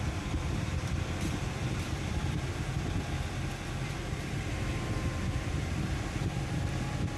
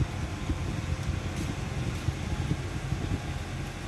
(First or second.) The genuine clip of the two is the second